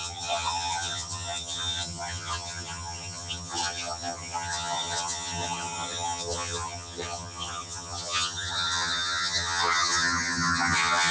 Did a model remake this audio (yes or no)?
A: yes